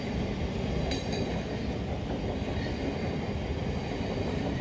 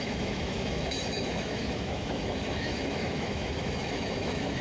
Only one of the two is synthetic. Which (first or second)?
second